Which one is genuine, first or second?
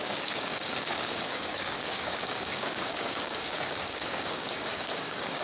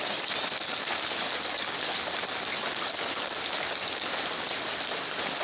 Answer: second